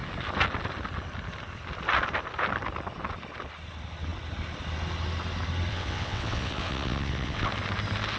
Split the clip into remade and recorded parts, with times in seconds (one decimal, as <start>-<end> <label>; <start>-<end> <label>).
0.0-5.7 recorded; 5.7-7.5 remade; 7.5-8.2 recorded

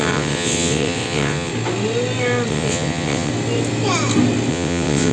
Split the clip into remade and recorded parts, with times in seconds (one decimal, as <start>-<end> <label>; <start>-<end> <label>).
0.0-1.5 remade; 1.5-2.5 recorded; 2.5-3.3 remade; 3.3-4.5 recorded; 4.5-5.1 remade